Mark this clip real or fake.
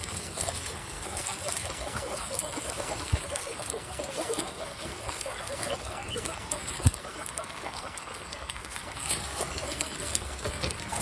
fake